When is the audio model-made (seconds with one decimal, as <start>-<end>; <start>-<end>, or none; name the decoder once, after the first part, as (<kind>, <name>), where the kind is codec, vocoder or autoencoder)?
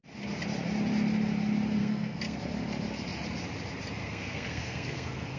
1.8-2.4 (codec, SNAC); 4.0-5.4